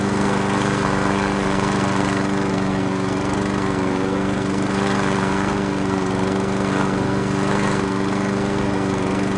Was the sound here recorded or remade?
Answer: remade